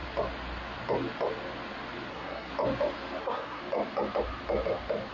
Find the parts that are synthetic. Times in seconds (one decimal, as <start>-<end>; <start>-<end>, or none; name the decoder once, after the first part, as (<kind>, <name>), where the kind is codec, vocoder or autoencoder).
2.1-2.5 (codec, SNAC); 3.2-3.6